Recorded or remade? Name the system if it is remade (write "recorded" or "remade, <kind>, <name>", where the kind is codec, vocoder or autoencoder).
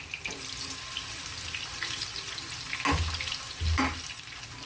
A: recorded